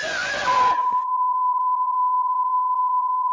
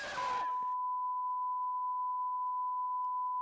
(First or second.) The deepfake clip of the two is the first